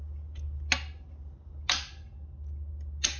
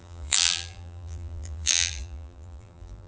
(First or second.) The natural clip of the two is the first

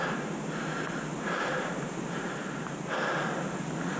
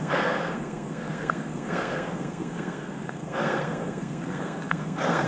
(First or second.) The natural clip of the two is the first